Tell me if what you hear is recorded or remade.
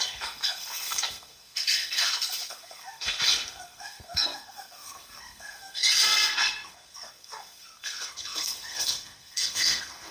remade